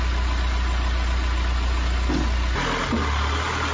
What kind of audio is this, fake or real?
real